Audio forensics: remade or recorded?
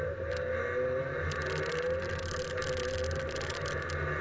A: recorded